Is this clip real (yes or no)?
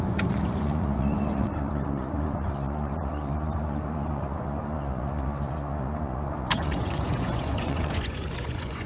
no